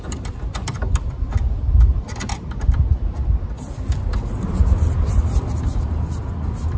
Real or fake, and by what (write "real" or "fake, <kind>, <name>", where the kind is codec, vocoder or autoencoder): real